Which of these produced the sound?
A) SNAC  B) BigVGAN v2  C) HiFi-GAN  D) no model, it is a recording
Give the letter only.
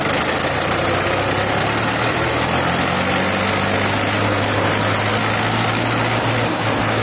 D